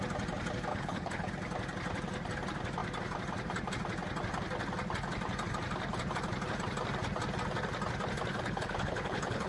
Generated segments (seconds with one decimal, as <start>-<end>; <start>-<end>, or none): 0.7-1.3; 8.3-9.5